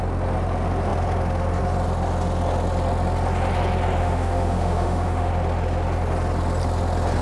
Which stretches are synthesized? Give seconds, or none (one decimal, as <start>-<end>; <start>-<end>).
4.0-5.3